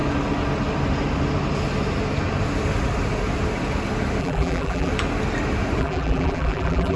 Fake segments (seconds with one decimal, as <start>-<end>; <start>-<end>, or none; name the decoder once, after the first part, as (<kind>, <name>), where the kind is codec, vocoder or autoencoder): 4.2-4.9 (vocoder, BigVGAN v2); 5.8-7.0